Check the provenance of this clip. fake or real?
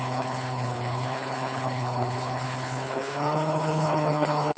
fake